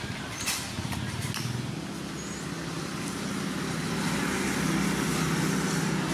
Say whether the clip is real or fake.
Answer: real